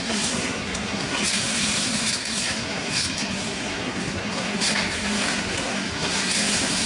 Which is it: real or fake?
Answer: fake